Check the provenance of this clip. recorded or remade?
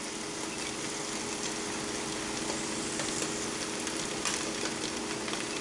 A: recorded